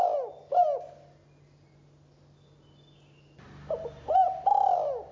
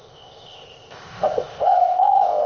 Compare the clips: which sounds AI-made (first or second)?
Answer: second